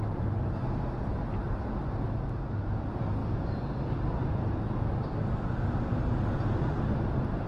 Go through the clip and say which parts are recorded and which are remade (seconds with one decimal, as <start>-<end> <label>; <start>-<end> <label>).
0.0-3.2 recorded; 3.2-3.8 remade; 3.8-7.5 recorded